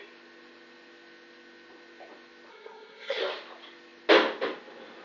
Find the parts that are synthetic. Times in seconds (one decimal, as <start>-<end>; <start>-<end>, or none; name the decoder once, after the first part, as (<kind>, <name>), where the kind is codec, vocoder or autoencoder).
2.5-3.2 (codec, SNAC)